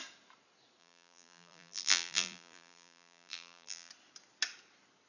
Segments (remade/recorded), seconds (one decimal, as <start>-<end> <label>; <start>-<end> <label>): 0.0-0.8 recorded; 0.8-3.9 remade; 3.9-5.1 recorded